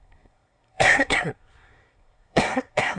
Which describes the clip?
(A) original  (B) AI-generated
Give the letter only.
B